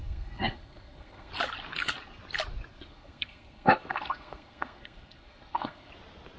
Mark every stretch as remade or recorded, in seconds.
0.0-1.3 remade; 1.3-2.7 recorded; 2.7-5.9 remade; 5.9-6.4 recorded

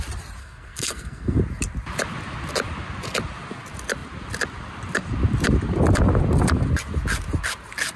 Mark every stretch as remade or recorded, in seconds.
0.0-0.4 recorded; 0.4-1.4 remade; 1.4-8.0 recorded

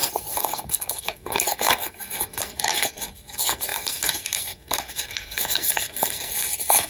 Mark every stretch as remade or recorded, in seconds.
0.0-6.9 remade

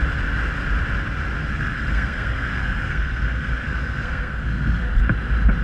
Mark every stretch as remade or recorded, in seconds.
0.0-1.5 recorded; 1.5-4.9 remade; 4.9-5.6 recorded

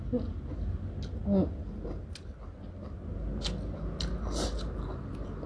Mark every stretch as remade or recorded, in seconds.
0.0-5.5 recorded